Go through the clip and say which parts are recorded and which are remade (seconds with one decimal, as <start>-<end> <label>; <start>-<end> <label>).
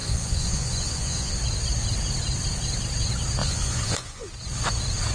0.0-1.3 remade; 1.3-3.4 recorded; 3.4-4.3 remade; 4.3-5.1 recorded